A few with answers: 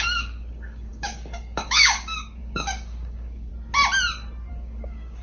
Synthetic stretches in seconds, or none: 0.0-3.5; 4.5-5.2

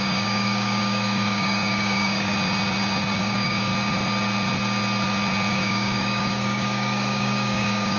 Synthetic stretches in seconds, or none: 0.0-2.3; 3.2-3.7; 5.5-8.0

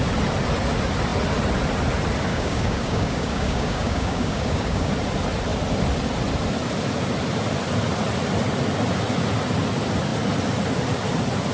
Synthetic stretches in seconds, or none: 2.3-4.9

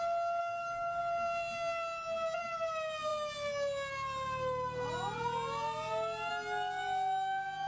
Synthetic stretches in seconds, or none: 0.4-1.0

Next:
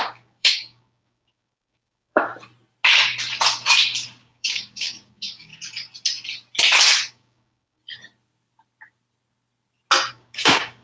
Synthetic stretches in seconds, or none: 0.0-2.3; 4.2-5.5; 7.1-7.8; 10.1-10.8

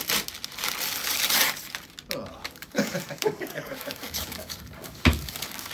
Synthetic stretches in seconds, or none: 2.3-5.7

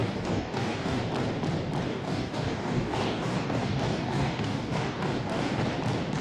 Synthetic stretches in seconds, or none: 0.0-1.0; 1.9-5.6